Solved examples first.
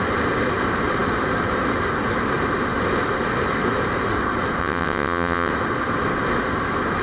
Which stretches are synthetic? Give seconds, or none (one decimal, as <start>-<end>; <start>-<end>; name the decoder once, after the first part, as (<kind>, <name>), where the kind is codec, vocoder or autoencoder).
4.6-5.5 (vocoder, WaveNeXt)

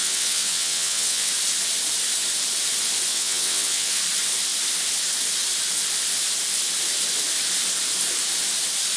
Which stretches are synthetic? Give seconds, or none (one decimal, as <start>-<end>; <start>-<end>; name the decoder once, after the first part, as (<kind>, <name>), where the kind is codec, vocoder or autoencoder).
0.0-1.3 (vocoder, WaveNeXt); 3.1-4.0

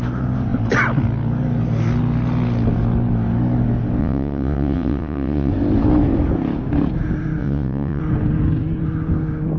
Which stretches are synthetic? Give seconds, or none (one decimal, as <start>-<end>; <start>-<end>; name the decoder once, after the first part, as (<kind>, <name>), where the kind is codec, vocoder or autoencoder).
4.0-5.5 (vocoder, WaveNeXt); 7.4-8.0